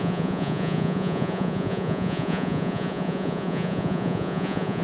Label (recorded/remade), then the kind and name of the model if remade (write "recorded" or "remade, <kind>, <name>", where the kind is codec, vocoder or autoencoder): remade, vocoder, Vocos